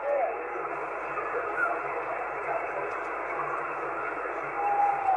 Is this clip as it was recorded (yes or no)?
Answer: yes